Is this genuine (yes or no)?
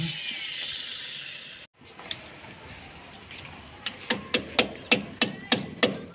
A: yes